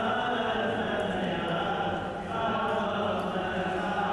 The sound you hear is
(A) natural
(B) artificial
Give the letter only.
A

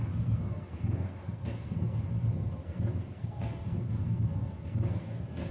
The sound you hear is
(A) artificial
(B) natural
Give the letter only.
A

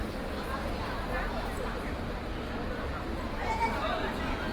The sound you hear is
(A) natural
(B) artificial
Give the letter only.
A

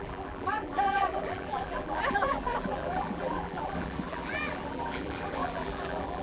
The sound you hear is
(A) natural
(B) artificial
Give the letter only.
B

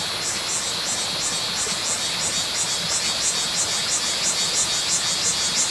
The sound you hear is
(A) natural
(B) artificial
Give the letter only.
A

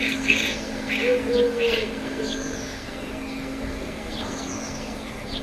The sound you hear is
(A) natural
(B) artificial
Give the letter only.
B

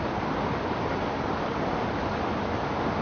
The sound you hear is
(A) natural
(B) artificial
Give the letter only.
A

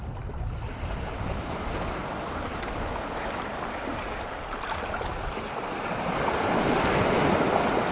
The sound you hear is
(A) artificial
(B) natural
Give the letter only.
B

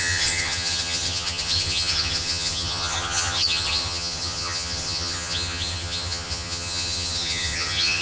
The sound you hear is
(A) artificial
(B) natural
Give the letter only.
A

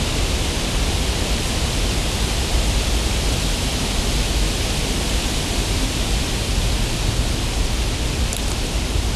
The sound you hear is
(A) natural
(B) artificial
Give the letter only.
A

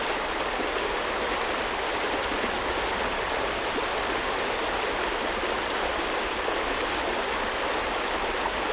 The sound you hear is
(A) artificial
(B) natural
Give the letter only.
B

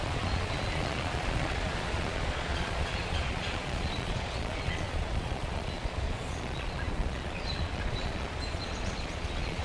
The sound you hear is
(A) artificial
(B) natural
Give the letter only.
A